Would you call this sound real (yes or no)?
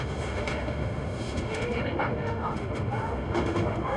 no